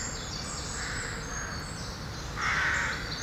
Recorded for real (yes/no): yes